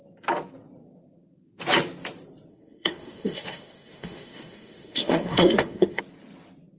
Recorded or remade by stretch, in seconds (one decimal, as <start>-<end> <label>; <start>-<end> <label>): 0.0-2.5 recorded; 2.5-6.0 remade; 6.0-6.8 recorded